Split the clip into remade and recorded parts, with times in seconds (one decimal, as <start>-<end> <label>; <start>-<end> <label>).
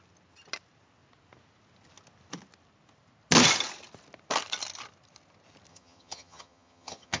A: 0.0-5.7 recorded; 5.7-7.2 remade